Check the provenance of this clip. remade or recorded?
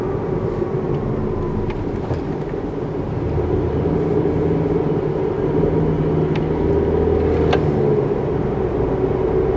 recorded